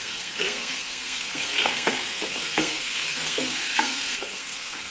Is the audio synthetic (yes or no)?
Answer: yes